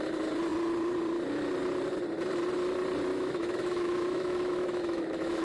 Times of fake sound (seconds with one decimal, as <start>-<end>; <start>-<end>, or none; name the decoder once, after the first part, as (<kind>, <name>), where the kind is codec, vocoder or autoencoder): 3.1-5.4 (autoencoder, DAC-VAE)